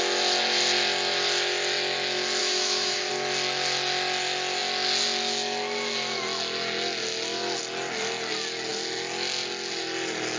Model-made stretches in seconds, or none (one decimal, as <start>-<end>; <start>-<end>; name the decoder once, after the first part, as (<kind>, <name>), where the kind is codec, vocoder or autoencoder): 2.4-3.1 (autoencoder, DAC-VAE)